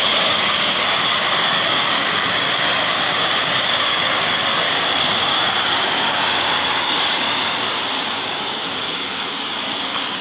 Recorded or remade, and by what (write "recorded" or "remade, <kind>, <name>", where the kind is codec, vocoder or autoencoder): remade, codec, DAC